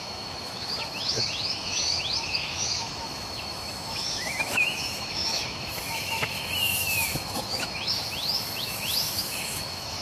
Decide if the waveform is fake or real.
fake